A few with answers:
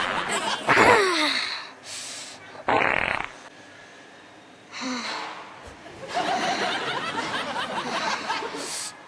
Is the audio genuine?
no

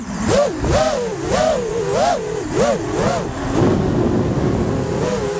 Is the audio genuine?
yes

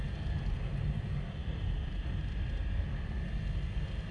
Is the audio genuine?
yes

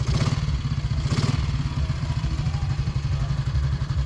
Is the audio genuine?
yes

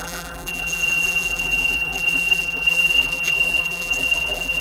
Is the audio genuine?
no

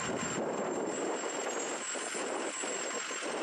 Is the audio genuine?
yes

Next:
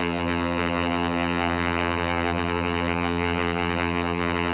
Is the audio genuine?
no